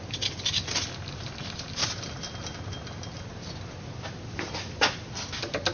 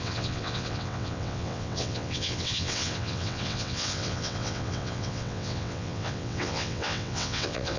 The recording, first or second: first